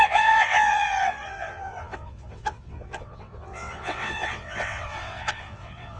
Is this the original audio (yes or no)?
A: no